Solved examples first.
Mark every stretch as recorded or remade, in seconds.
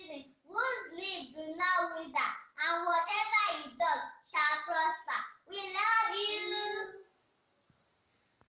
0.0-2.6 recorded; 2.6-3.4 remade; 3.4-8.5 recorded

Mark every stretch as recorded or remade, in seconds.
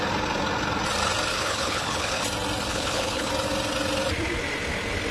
0.0-1.3 recorded; 1.3-2.2 remade; 2.2-2.7 recorded; 2.7-3.3 remade; 3.3-5.1 recorded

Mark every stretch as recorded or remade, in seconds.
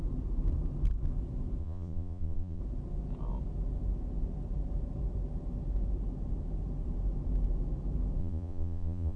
0.0-1.6 recorded; 1.6-2.6 remade; 2.6-8.2 recorded; 8.2-9.2 remade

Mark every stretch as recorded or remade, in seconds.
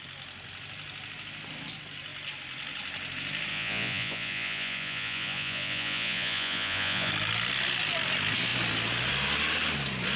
0.0-3.5 recorded; 3.5-7.1 remade; 7.1-10.2 recorded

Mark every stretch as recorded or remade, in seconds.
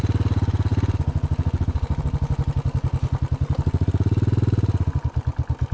0.0-5.7 recorded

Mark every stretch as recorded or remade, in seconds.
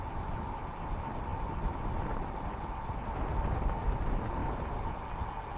0.0-4.4 recorded; 4.4-5.0 remade; 5.0-5.6 recorded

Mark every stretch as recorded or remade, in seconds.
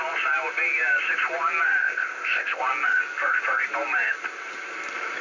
0.0-1.8 recorded; 1.8-2.6 remade; 2.6-5.2 recorded